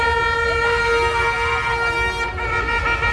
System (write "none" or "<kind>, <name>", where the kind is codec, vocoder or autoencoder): none